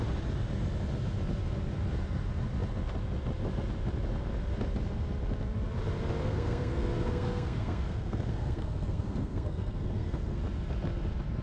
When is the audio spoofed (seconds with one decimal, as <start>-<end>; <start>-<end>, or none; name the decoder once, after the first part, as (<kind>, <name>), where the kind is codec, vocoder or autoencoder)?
6.2-10.4 (codec, SNAC)